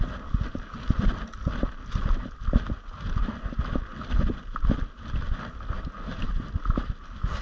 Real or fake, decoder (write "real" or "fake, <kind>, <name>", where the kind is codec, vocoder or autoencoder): real